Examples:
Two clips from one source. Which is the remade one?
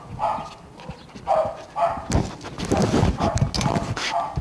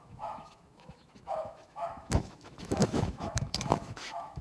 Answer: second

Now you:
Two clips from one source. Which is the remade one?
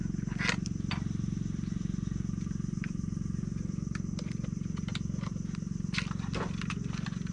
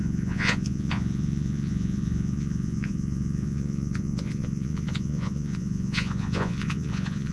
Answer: second